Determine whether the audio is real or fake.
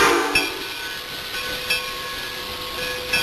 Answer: real